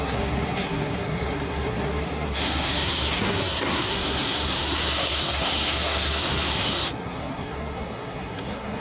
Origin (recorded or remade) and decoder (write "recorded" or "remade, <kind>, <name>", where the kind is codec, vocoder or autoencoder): remade, codec, SNAC